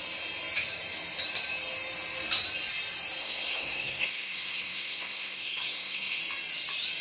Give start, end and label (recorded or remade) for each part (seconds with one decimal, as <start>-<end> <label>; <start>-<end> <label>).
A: 0.0-3.2 recorded; 3.2-6.2 remade; 6.2-7.0 recorded